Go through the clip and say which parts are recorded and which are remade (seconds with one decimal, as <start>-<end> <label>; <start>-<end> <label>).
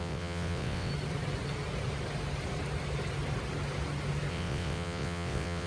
0.0-0.9 remade; 0.9-4.3 recorded; 4.3-5.7 remade